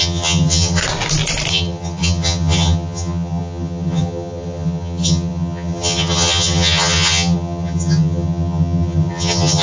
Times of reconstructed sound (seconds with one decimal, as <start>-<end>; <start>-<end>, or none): 0.0-0.8; 1.5-9.6